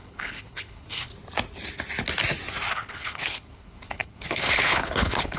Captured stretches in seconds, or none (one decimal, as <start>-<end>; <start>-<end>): 1.1-2.7